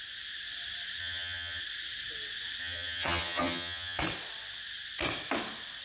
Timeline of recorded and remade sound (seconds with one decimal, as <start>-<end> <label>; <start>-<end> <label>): 0.0-1.0 recorded; 1.0-1.6 remade; 1.6-2.6 recorded; 2.6-4.0 remade; 4.0-5.8 recorded